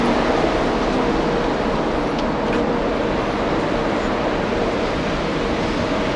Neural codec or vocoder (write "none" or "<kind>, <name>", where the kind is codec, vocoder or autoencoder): none